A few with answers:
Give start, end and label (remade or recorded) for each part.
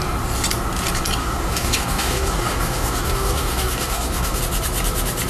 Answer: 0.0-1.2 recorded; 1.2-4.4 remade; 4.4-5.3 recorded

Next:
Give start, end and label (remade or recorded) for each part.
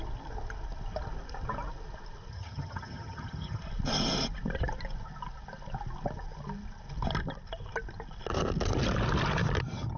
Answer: 0.0-2.3 recorded; 2.3-3.6 remade; 3.6-10.0 recorded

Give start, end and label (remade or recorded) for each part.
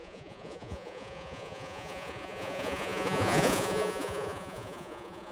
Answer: 0.0-5.3 remade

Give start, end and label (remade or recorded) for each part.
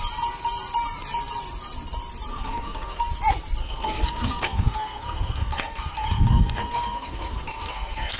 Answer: 0.0-2.3 recorded; 2.3-3.0 remade; 3.0-3.6 recorded; 3.6-8.2 remade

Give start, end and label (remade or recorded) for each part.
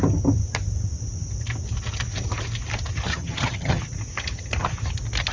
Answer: 0.0-3.1 recorded; 3.1-3.8 remade; 3.8-5.3 recorded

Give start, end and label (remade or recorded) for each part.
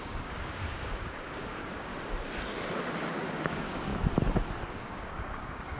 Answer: 0.0-1.9 remade; 1.9-3.1 recorded; 3.1-3.9 remade; 3.9-4.7 recorded; 4.7-5.8 remade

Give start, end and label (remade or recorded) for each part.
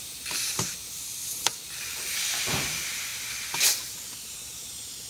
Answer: 0.0-3.1 remade; 3.1-3.9 recorded; 3.9-5.1 remade